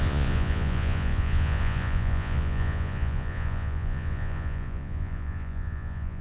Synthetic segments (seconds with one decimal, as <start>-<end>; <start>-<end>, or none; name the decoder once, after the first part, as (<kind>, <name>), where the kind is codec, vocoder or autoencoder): 0.0-6.2 (vocoder, Vocos)